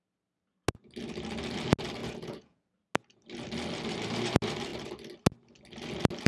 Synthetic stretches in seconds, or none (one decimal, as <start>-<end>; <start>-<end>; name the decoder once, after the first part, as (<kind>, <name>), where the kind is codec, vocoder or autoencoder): 2.0-2.6 (vocoder, Vocos)